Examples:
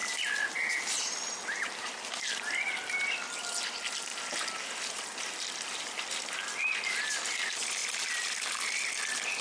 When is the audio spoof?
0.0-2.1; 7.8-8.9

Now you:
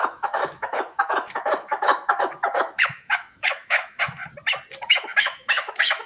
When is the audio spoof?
0.0-4.2; 4.8-6.1